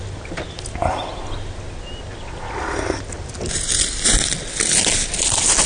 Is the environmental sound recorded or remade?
recorded